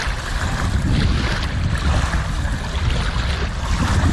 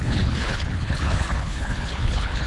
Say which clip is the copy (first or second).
second